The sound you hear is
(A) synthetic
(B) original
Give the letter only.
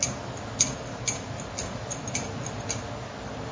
B